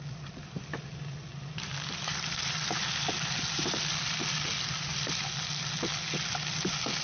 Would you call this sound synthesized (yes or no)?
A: yes